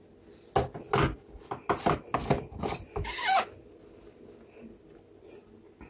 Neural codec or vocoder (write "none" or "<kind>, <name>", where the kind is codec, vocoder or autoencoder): none